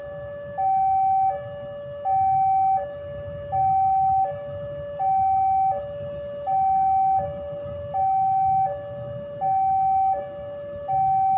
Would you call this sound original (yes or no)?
yes